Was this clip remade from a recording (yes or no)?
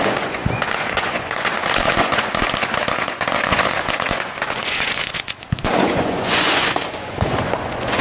yes